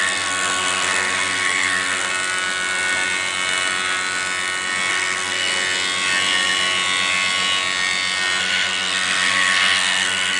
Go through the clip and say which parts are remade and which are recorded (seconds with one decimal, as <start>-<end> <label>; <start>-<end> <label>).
0.0-2.1 remade; 2.1-4.9 recorded; 4.9-5.5 remade; 5.5-8.4 recorded; 8.4-10.4 remade

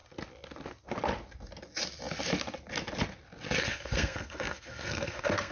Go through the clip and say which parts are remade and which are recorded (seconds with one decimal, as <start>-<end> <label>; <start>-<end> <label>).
0.0-3.6 recorded; 3.6-5.5 remade

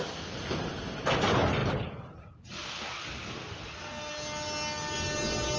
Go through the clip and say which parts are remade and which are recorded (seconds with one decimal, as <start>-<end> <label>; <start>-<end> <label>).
0.0-5.6 recorded

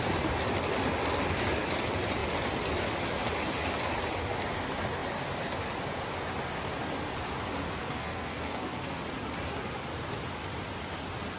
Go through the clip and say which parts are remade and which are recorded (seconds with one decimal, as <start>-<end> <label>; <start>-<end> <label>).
0.0-7.8 recorded; 7.8-9.0 remade; 9.0-11.4 recorded

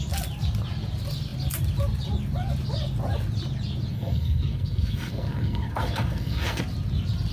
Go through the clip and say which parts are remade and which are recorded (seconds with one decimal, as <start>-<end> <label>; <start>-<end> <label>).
0.0-3.9 recorded; 3.9-6.6 remade; 6.6-7.3 recorded